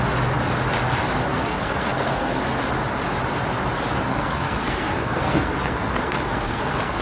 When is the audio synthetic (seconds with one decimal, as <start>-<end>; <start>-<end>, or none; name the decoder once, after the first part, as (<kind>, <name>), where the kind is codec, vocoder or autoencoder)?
1.3-2.4 (codec, SNAC); 4.1-7.0